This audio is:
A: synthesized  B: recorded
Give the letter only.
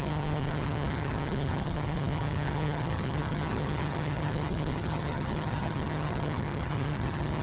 A